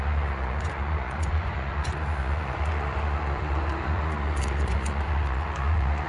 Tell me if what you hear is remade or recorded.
remade